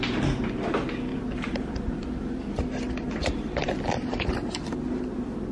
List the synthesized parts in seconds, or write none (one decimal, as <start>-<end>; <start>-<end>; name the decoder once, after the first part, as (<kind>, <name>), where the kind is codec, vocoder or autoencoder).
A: 1.1-1.8 (vocoder, BigVGAN v2)